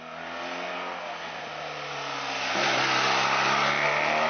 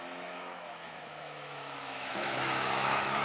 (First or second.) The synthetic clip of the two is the second